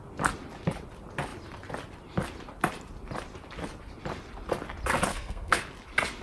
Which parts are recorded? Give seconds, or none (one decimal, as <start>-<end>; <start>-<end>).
0.0-5.1; 5.6-6.2